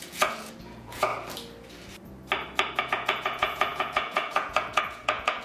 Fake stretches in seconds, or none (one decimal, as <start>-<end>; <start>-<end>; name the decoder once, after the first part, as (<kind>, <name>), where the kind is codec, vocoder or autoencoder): 0.0-1.1 (vocoder, Vocos); 2.8-5.4